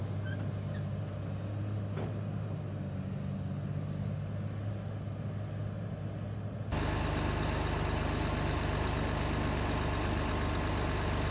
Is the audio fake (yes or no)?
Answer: no